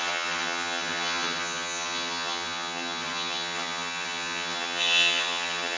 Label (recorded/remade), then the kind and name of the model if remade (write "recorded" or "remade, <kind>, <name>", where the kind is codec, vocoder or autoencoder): remade, vocoder, HiFi-GAN